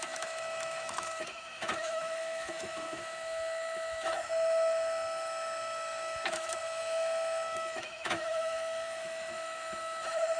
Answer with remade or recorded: remade